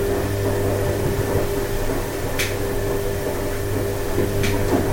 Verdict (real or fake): real